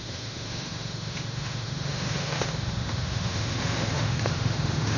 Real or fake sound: fake